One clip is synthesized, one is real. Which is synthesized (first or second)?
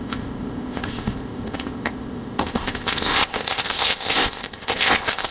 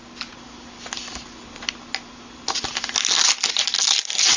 first